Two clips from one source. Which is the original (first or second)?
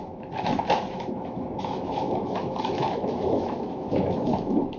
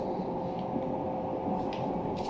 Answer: second